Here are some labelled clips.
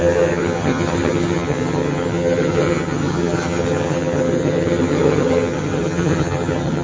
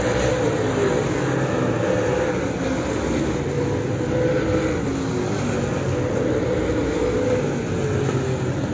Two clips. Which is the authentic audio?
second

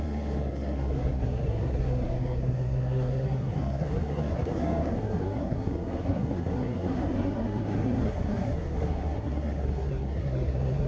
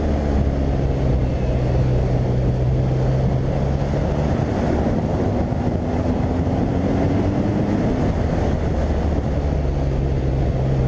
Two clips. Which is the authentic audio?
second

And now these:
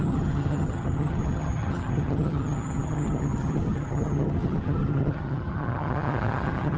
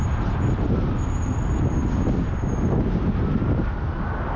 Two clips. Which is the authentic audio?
second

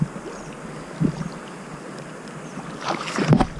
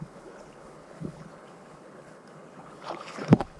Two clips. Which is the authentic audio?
first